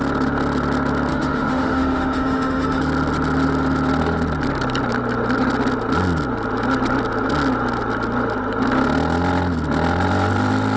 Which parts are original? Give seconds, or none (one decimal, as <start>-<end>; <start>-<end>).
0.0-1.1; 2.8-10.8